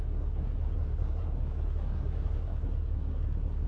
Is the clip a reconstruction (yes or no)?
yes